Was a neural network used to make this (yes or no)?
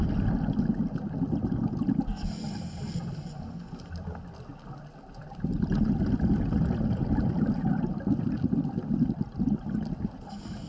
no